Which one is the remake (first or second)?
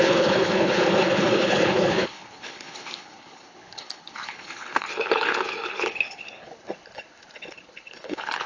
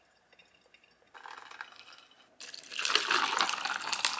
first